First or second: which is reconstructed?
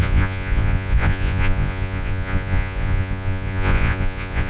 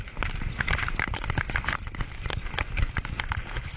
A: first